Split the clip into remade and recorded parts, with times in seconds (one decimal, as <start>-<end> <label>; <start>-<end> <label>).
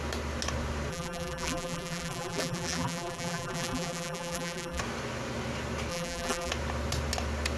0.0-0.9 recorded; 0.9-4.8 remade; 4.8-5.9 recorded; 5.9-6.5 remade; 6.5-7.6 recorded